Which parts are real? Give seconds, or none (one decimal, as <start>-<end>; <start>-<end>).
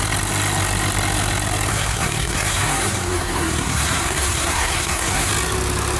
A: 0.0-1.7; 5.3-6.0